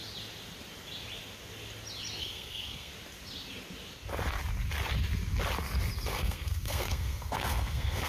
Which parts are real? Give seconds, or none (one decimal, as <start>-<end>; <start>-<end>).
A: 0.0-2.2; 2.9-6.1